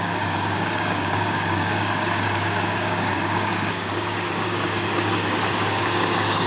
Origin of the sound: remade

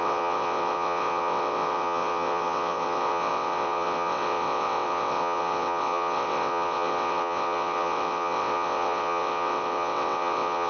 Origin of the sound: remade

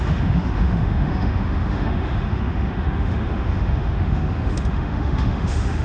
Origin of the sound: remade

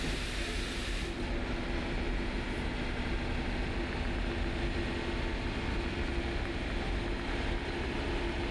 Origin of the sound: recorded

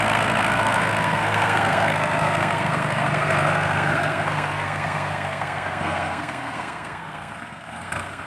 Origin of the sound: remade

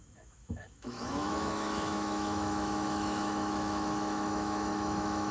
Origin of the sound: remade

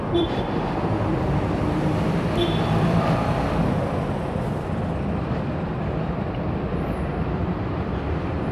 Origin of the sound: remade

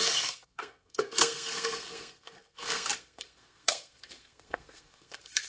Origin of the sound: remade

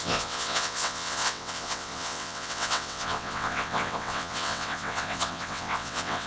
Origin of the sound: remade